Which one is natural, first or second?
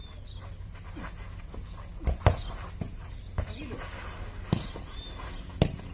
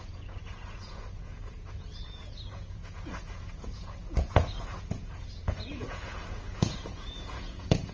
first